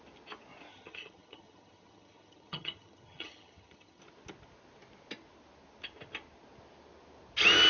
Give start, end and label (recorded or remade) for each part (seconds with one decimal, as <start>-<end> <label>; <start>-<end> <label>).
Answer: 0.0-0.7 recorded; 0.7-4.0 remade; 4.0-7.7 recorded